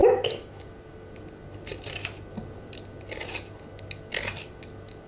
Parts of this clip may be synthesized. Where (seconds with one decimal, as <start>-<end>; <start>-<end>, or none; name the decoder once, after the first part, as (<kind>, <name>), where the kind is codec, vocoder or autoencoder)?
0.0-0.6 (autoencoder, DAC-VAE)